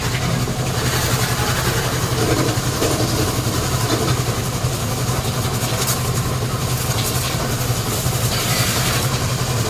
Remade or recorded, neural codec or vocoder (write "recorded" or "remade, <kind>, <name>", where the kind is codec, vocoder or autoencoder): recorded